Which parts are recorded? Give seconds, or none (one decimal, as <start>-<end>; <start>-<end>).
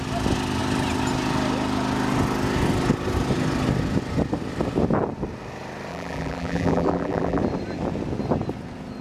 0.0-5.9; 7.4-9.0